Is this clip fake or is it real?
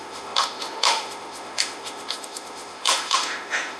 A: fake